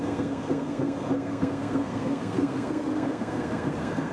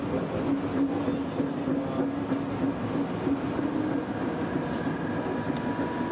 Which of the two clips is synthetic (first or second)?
first